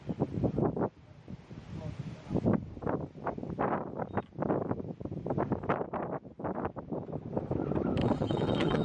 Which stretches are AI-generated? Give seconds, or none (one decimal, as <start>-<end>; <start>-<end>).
8.0-8.8